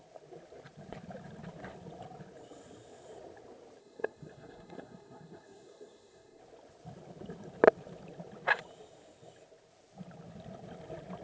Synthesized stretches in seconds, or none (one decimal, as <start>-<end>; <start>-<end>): 3.8-6.4